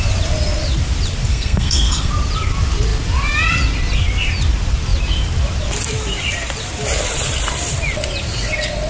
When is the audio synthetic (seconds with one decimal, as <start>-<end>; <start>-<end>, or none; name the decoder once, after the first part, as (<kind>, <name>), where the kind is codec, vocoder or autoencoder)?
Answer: 1.3-2.1 (codec, SNAC)